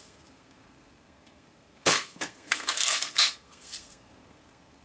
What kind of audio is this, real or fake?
fake